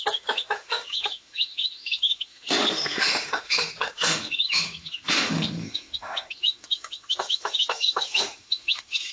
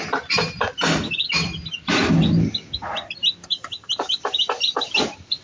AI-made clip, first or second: first